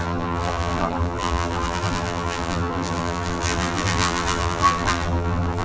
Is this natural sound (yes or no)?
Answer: no